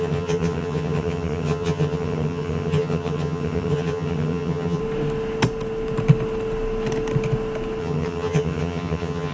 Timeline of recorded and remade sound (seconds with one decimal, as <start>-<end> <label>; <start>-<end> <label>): 0.0-4.8 remade; 4.8-7.8 recorded; 7.8-9.3 remade